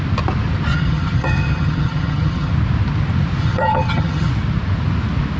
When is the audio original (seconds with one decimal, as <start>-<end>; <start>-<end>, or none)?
0.0-0.7; 2.5-3.4; 4.3-5.4